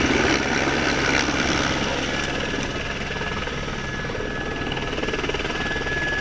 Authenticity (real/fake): real